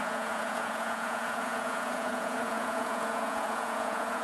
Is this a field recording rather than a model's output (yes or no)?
no